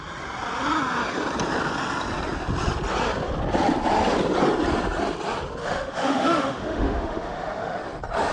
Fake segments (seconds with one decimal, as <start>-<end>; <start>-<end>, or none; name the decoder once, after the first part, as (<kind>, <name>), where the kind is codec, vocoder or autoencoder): 5.6-7.8 (autoencoder, DAC-VAE)